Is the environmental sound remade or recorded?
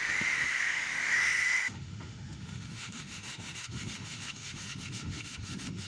remade